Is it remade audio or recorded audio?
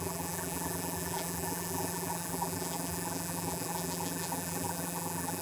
remade